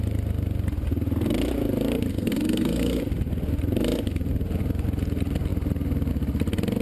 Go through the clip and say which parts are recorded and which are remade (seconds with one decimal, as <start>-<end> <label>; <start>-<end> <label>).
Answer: 0.0-2.1 recorded; 2.1-3.0 remade; 3.0-6.8 recorded